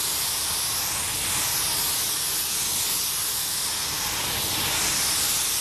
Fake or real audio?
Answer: real